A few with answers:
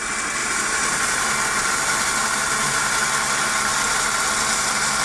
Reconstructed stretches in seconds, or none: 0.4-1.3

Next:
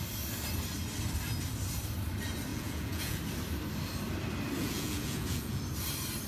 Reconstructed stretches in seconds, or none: 2.5-3.2; 4.6-5.6

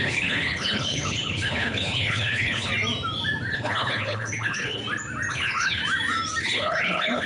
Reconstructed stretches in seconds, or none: 0.0-2.7; 3.5-4.8; 5.3-5.8; 6.4-7.3

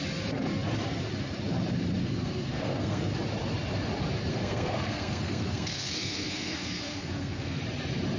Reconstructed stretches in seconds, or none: 2.0-3.1; 4.3-7.6

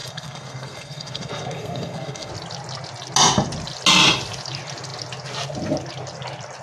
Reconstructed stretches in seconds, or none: 0.0-2.3

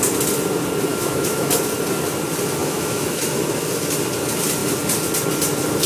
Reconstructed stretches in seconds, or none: 0.9-1.5; 2.6-3.3

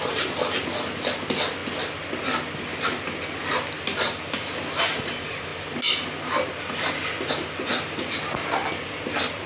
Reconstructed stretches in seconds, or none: none